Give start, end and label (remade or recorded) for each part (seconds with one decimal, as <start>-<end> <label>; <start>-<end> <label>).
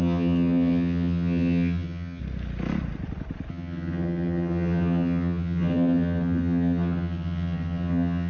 0.0-2.2 remade; 2.2-3.5 recorded; 3.5-8.3 remade